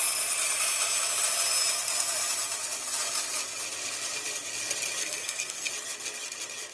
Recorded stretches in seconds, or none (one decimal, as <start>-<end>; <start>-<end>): 0.0-5.0; 5.7-6.7